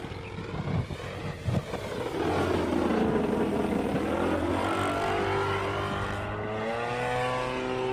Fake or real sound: real